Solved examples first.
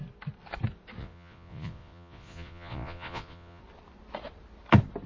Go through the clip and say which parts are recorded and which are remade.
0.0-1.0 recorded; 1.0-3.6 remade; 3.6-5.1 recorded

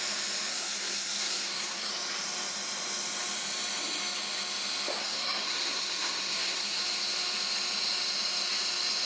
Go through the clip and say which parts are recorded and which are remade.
0.0-0.5 recorded; 0.5-1.9 remade; 1.9-5.0 recorded; 5.0-6.8 remade; 6.8-9.1 recorded

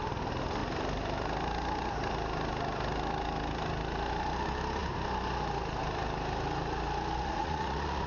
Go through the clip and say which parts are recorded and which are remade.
0.0-7.2 recorded; 7.2-8.1 remade

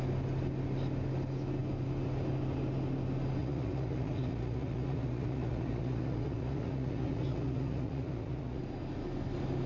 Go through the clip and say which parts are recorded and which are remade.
0.0-3.4 recorded; 3.4-8.6 remade; 8.6-9.7 recorded